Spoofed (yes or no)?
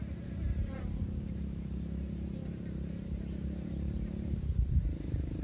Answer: yes